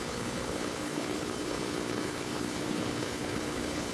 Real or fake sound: fake